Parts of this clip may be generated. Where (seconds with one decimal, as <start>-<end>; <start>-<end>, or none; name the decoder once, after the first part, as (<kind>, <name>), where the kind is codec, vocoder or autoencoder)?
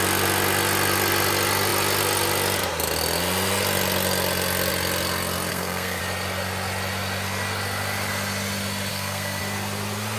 5.5-6.0 (codec, SNAC); 8.9-9.4